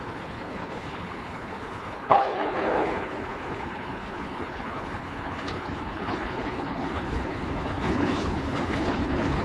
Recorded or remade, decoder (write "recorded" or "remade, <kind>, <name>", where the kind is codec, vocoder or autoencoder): remade, codec, HILCodec